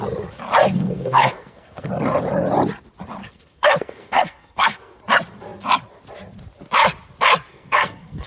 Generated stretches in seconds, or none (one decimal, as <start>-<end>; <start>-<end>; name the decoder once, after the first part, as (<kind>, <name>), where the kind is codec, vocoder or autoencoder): 0.6-1.9 (codec, SNAC); 3.2-5.0; 7.5-8.3